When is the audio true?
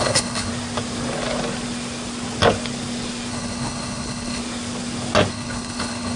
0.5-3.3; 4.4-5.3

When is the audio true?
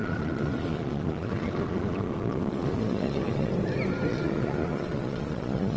3.5-4.1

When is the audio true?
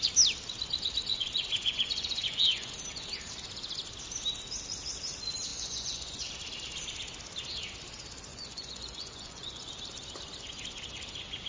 0.0-1.1; 2.7-5.5; 6.3-8.3; 9.7-11.5